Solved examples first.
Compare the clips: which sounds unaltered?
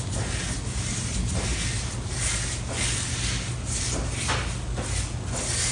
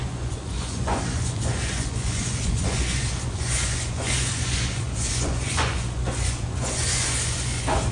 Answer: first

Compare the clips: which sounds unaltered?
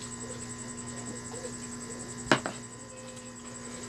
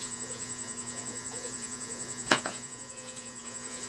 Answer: first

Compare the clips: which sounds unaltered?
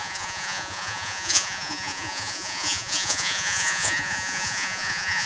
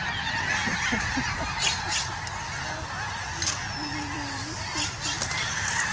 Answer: second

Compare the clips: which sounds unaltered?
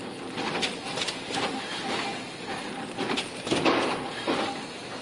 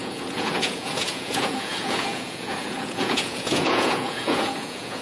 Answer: first